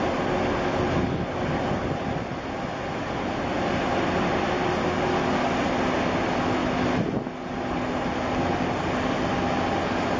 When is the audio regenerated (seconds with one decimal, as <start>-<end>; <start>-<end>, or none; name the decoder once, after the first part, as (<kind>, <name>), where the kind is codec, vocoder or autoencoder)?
none